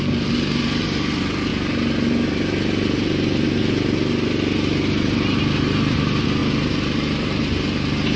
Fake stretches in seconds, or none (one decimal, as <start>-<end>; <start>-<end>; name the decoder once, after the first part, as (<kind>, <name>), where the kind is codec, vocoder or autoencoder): 0.0-1.5 (vocoder, BigVGAN v2); 5.4-8.2